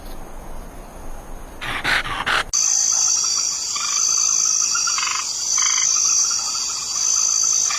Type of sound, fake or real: real